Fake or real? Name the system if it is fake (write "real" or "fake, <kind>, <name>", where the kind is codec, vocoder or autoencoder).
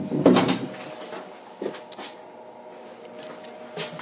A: real